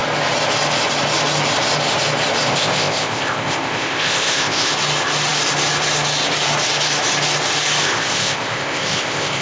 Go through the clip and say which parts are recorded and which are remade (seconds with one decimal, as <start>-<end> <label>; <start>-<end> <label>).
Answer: 0.0-2.5 recorded; 2.5-4.7 remade; 4.7-7.8 recorded; 7.8-9.4 remade